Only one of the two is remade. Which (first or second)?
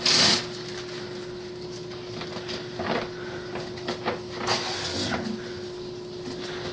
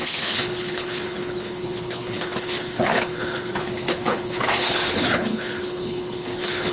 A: second